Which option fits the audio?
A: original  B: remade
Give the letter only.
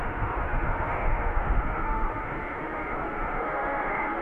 B